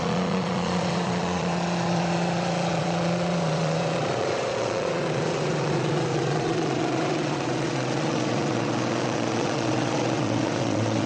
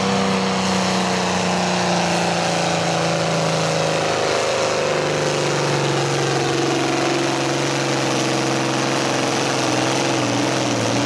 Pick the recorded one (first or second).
second